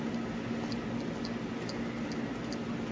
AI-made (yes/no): no